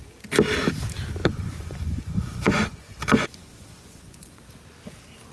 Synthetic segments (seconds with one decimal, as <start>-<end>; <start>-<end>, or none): 1.2-4.4